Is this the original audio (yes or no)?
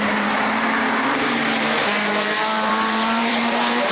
no